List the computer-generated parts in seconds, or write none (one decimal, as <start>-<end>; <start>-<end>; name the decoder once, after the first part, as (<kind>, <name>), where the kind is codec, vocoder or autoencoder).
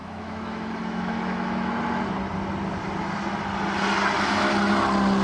0.0-1.7 (autoencoder, DAC-VAE)